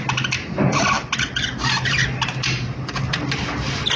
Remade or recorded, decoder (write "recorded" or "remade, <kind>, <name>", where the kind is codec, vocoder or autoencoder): recorded